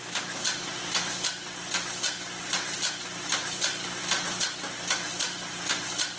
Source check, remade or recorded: recorded